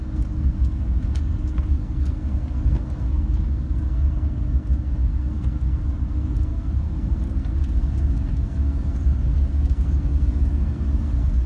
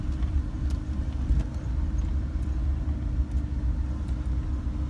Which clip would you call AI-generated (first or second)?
first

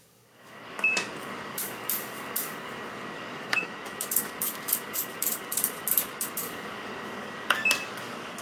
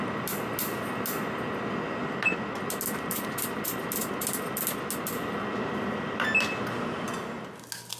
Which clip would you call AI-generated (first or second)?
first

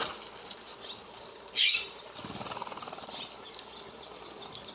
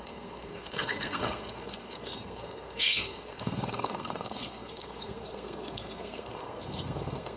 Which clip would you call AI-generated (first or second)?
second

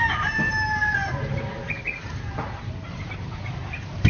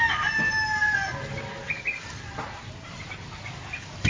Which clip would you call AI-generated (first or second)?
first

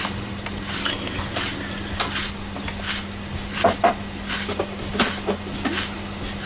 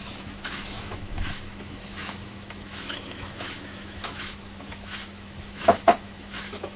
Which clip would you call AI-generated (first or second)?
second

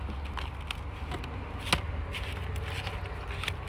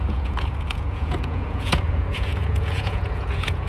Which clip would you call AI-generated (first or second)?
second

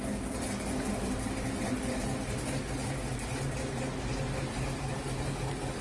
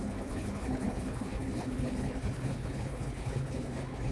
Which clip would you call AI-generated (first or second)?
second